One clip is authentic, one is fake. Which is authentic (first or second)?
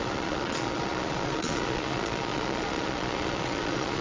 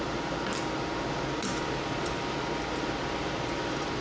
second